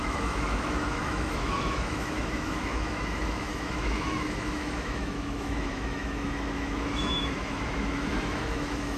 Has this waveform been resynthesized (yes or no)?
yes